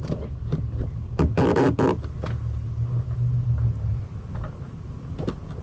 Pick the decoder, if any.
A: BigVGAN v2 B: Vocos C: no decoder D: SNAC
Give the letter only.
C